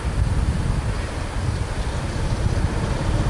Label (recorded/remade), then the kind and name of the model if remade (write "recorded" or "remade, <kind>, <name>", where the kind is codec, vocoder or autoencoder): recorded